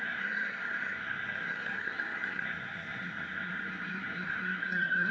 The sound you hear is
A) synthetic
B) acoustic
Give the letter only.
A